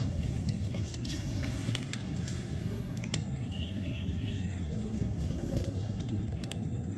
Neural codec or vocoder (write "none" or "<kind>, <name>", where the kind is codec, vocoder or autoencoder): codec, SNAC